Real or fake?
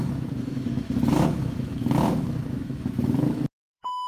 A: fake